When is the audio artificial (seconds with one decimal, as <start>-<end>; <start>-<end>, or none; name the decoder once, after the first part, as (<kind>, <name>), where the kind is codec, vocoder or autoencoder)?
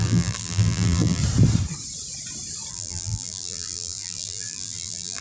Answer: 0.0-1.2 (vocoder, BigVGAN v2); 2.7-5.2